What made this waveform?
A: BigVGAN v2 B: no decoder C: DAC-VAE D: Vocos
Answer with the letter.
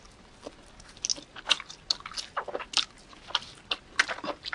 B